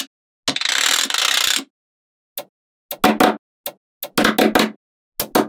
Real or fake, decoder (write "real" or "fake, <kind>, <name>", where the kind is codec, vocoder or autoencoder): real